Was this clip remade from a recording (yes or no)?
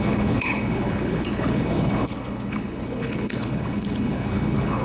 yes